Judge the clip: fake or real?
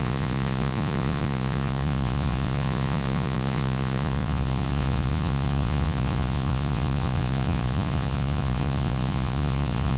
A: fake